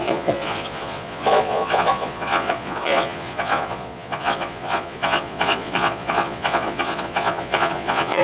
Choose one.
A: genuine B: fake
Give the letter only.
B